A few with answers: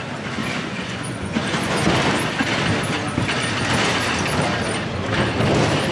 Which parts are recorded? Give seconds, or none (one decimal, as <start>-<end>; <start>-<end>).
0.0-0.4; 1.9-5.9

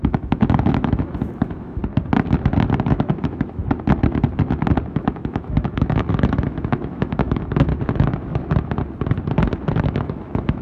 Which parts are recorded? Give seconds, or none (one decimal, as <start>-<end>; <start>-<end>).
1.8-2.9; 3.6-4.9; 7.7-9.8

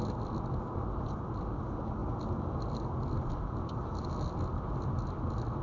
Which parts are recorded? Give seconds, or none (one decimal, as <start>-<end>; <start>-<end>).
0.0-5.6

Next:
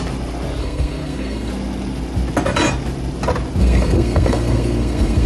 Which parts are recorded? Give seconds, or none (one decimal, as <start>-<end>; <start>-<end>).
0.0-0.6; 1.5-3.6